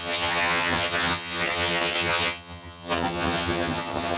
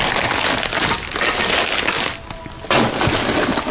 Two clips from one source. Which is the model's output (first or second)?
first